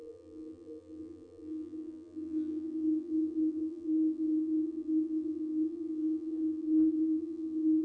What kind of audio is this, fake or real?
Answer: fake